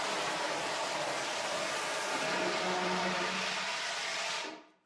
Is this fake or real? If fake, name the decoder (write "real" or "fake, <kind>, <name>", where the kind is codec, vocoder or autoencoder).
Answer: real